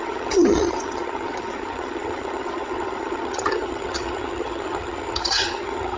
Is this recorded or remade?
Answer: remade